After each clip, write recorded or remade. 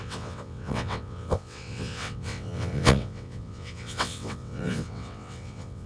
remade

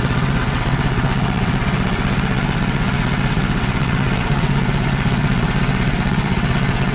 remade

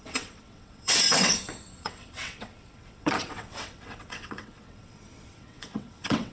remade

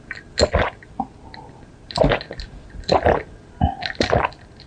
recorded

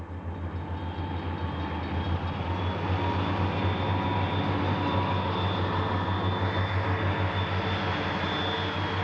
recorded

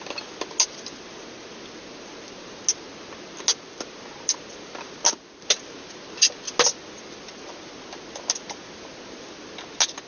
recorded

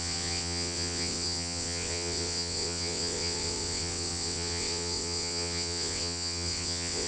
remade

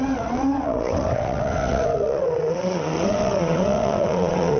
remade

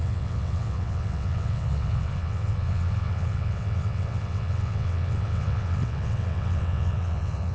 remade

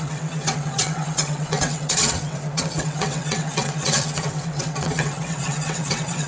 remade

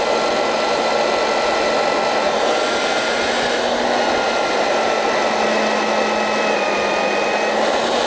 recorded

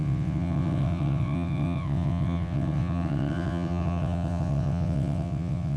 remade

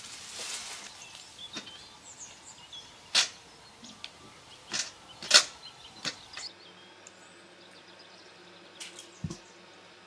recorded